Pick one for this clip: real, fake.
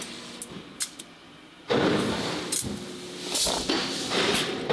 real